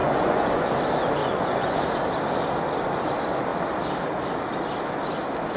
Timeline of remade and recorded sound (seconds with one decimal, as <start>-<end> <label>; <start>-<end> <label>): 0.0-0.7 remade; 0.7-1.2 recorded; 1.2-1.8 remade; 1.8-5.6 recorded